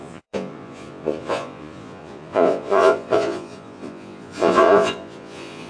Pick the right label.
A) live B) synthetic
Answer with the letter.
B